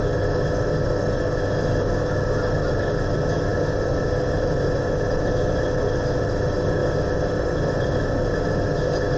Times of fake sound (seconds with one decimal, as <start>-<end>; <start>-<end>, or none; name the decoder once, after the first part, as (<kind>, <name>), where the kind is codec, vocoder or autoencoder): 5.1-5.8 (vocoder, BigVGAN v2)